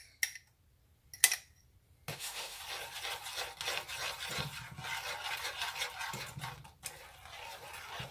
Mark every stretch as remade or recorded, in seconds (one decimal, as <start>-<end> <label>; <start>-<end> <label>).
0.0-2.1 recorded; 2.1-2.6 remade; 2.6-8.1 recorded